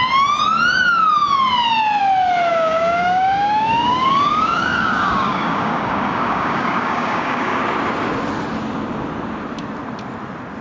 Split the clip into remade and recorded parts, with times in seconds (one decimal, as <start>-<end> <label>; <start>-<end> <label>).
0.0-2.5 recorded; 2.5-7.6 remade; 7.6-10.6 recorded